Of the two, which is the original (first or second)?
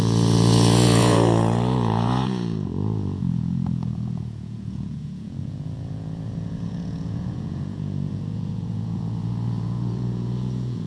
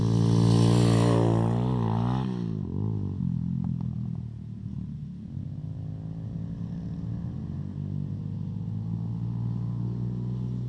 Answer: second